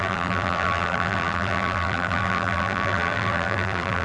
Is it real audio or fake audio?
fake